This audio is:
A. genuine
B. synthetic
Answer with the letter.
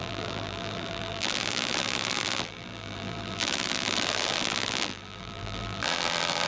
B